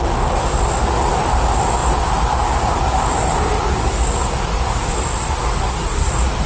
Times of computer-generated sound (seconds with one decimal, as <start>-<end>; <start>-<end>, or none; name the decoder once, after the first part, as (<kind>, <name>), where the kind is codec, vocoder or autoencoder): 5.6-6.1 (codec, SNAC)